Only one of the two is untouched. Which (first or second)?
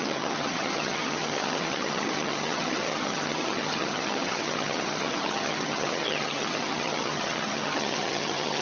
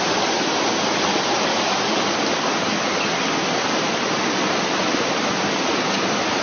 second